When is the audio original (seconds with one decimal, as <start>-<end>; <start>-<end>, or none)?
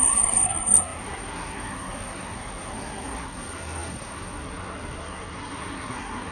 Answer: none